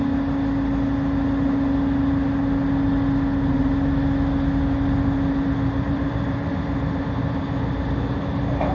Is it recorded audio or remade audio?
recorded